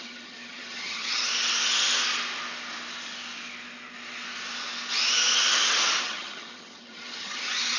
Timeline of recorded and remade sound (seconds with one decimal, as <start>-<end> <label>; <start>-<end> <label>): 0.0-1.3 remade; 1.3-6.0 recorded; 6.0-7.8 remade